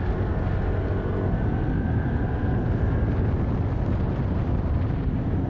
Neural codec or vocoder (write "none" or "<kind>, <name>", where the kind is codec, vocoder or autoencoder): none